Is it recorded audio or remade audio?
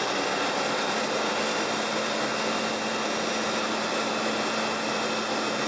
recorded